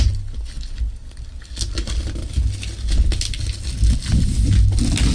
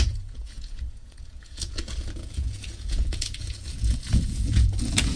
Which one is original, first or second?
first